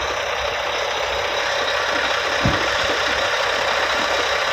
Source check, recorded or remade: remade